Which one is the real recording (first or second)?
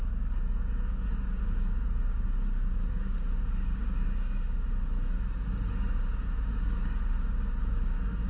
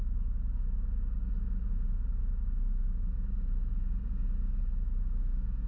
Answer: second